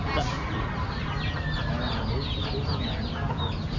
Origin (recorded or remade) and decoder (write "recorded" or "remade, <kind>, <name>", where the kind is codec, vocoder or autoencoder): recorded